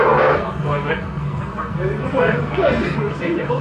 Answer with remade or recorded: remade